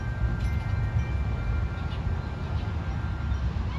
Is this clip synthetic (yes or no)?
no